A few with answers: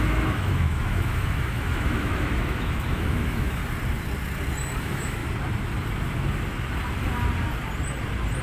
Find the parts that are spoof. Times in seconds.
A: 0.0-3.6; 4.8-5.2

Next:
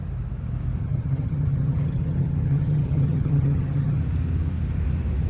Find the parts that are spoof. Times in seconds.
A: 0.8-4.0

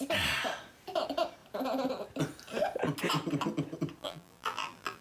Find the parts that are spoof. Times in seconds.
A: 4.0-5.0

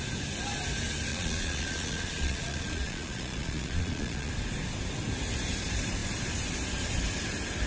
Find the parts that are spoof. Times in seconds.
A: 1.1-4.3

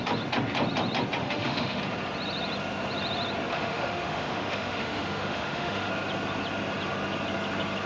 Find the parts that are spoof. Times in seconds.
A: 1.2-1.8; 3.5-5.9